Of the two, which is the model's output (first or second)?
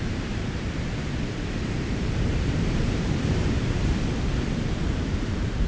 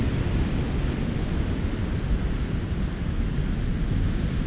first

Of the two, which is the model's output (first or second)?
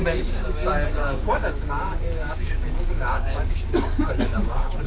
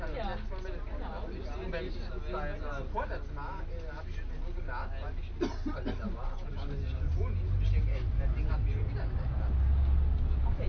first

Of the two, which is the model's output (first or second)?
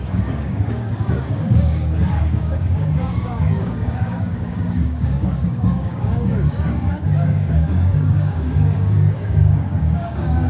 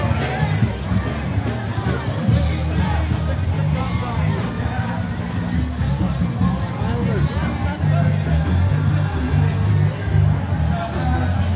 first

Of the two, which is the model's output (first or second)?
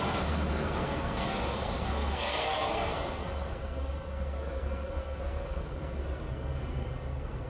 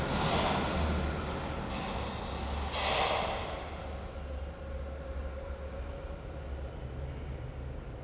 first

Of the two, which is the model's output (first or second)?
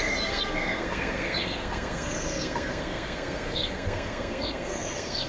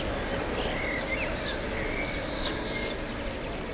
first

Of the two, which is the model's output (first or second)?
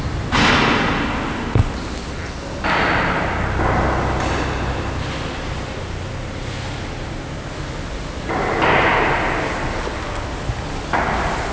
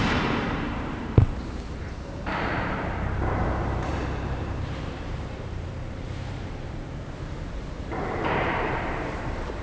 second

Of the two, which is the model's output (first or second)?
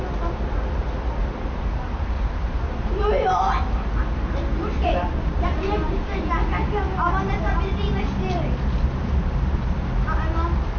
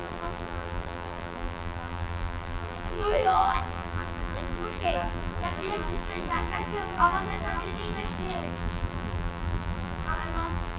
second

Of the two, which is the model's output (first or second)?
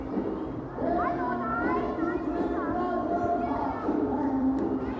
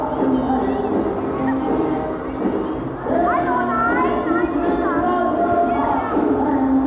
first